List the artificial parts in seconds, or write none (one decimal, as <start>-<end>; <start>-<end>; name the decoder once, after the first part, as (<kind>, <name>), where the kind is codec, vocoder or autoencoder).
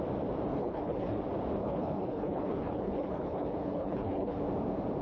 0.5-1.2 (codec, HILCodec); 1.6-4.4